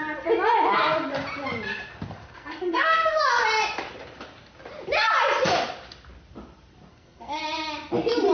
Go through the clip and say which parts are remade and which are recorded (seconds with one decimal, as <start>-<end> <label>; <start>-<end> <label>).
0.0-2.2 recorded; 2.2-3.2 remade; 3.2-6.9 recorded; 6.9-7.4 remade; 7.4-8.3 recorded